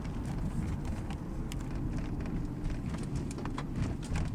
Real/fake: real